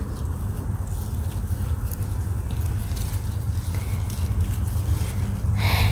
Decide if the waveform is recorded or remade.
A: recorded